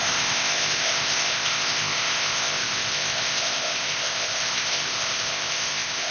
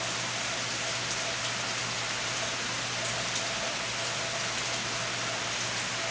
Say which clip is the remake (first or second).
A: first